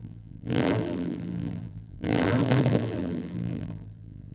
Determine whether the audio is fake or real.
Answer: fake